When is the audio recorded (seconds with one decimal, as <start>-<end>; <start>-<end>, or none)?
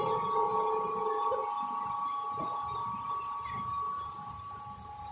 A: 0.0-5.1